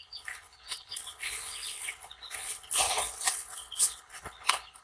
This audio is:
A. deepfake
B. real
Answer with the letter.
A